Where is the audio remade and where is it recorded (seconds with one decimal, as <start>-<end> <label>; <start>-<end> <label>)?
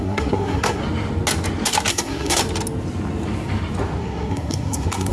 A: 0.0-0.8 remade; 0.8-1.9 recorded; 1.9-2.4 remade; 2.4-4.0 recorded; 4.0-5.1 remade